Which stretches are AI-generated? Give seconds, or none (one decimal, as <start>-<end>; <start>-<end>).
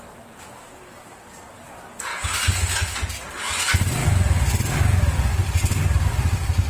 none